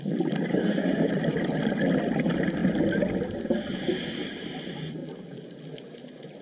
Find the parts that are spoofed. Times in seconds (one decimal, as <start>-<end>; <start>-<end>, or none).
0.5-1.1